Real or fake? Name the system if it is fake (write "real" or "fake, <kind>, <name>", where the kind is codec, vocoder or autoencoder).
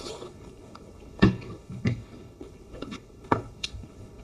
fake, codec, HILCodec